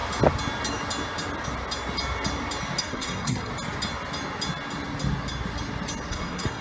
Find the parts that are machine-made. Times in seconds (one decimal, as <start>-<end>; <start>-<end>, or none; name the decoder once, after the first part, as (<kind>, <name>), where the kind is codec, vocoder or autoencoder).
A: 2.8-3.5 (codec, SNAC); 6.1-6.6

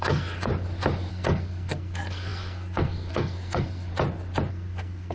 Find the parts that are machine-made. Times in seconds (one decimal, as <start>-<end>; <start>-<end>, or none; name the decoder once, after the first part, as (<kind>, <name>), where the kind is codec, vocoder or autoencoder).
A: 0.0-0.5 (codec, SNAC); 1.1-3.9; 4.5-5.1

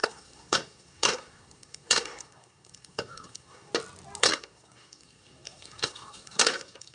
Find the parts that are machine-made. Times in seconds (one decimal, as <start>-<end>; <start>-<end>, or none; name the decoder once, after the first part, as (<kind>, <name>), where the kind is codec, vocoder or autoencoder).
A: 0.0-3.7 (codec, SNAC); 4.2-6.9

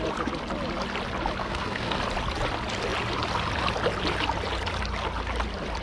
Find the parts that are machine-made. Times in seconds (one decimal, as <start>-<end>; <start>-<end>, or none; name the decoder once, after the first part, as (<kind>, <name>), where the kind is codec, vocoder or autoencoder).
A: 1.4-2.0 (codec, SNAC)

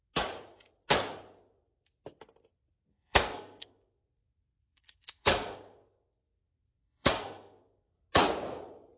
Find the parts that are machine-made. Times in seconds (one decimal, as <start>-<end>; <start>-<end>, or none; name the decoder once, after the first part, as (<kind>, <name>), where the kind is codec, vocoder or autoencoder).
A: 2.9-7.9 (codec, SNAC)